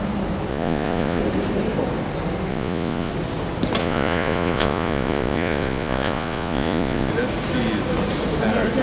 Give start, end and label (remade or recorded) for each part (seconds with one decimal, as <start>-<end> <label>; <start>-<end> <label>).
0.0-0.5 recorded; 0.5-1.2 remade; 1.2-2.5 recorded; 2.5-3.1 remade; 3.1-3.8 recorded; 3.8-7.1 remade; 7.1-8.8 recorded